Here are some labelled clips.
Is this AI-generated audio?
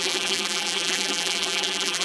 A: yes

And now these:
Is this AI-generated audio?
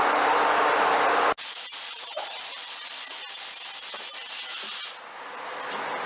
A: no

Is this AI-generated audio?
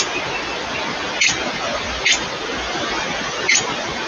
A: no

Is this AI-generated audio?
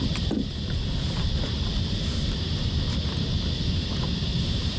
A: yes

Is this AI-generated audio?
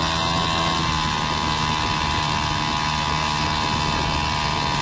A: no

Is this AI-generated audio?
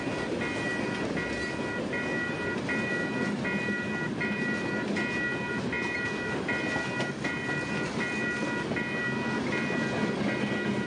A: no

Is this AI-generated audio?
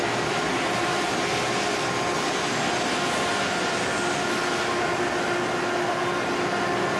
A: no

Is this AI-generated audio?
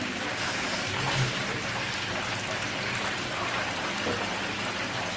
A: yes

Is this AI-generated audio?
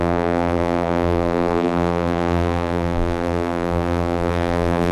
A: yes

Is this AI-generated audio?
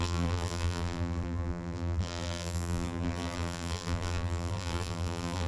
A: yes